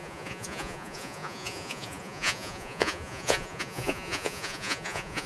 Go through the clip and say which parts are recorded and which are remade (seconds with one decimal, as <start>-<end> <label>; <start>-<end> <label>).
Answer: 0.0-5.3 remade